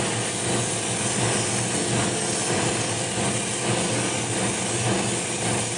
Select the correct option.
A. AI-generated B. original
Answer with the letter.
B